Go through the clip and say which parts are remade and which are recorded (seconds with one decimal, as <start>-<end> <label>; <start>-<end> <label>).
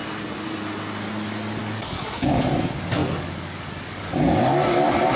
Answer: 0.0-1.6 recorded; 1.6-2.4 remade; 2.4-3.0 recorded; 3.0-4.0 remade; 4.0-5.2 recorded